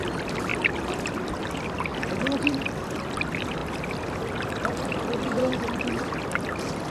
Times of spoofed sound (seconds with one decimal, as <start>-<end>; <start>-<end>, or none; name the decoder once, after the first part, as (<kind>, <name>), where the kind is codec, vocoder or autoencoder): none